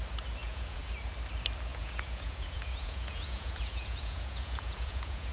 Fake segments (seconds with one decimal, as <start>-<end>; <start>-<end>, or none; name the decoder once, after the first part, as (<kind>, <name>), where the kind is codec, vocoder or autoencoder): 0.4-0.9 (vocoder, Vocos); 1.7-5.3